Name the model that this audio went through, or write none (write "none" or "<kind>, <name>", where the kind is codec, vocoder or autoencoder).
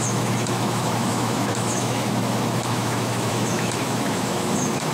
autoencoder, DAC-VAE